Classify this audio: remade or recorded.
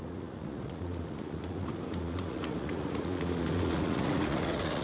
remade